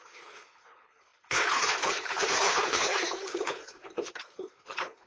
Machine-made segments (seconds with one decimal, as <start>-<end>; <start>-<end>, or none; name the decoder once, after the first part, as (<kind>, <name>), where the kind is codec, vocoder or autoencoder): 0.0-5.1 (codec, HILCodec)